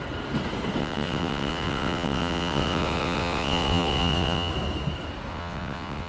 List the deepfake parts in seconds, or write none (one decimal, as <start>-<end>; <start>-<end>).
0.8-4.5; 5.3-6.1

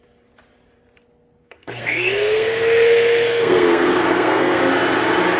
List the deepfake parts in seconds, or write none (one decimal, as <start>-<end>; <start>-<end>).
1.4-4.6

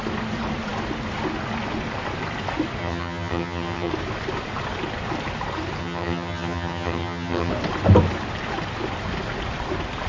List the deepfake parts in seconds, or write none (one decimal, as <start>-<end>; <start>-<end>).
2.8-3.9; 5.8-7.5

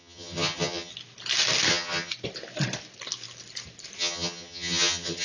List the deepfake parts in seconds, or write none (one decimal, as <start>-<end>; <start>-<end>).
0.0-0.9; 1.7-2.1; 4.0-5.2